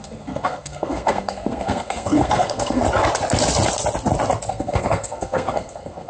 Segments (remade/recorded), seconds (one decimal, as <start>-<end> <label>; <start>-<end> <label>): 0.0-2.8 remade; 2.8-4.5 recorded; 4.5-6.1 remade